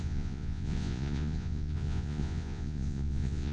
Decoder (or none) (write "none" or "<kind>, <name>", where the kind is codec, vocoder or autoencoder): vocoder, Vocos